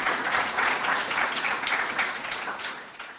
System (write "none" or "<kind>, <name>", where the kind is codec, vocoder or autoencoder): vocoder, Vocos